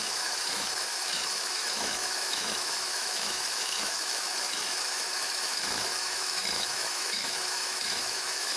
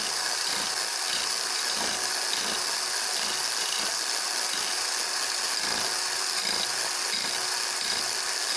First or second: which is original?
second